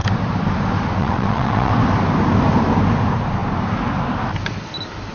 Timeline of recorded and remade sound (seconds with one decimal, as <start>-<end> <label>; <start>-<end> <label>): 0.0-1.0 recorded; 1.0-1.7 remade; 1.7-5.1 recorded